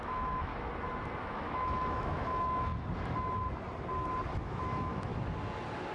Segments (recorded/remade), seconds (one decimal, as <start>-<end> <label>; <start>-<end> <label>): 0.0-0.5 remade; 0.5-1.2 recorded; 1.2-2.7 remade; 2.7-4.4 recorded; 4.4-5.1 remade; 5.1-5.9 recorded